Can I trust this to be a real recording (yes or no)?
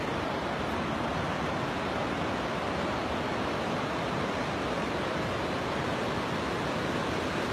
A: yes